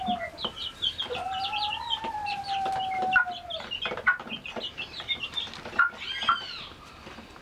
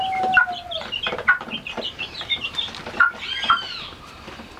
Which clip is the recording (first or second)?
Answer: first